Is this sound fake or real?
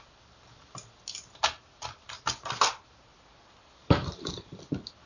real